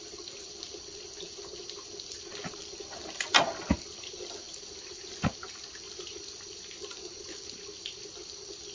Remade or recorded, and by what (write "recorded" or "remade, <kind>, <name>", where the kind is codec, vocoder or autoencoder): remade, vocoder, BigVGAN v2